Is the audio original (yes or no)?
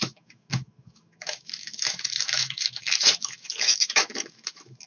no